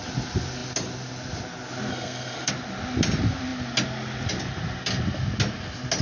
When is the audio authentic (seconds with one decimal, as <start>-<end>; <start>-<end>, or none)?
0.0-1.9; 2.5-6.0